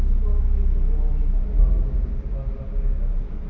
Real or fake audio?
real